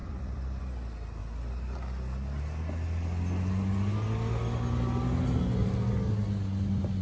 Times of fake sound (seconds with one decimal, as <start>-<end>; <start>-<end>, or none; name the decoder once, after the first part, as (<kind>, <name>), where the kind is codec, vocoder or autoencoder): 0.0-0.6 (vocoder, BigVGAN v2)